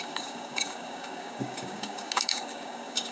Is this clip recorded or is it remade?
remade